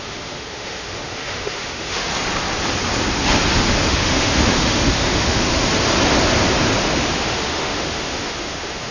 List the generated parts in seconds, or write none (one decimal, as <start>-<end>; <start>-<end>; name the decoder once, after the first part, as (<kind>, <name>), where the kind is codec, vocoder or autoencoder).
0.0-2.1 (autoencoder, DAC-VAE); 3.8-5.6; 7.1-8.9